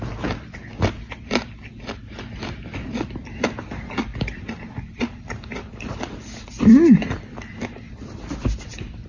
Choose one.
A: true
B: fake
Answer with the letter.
A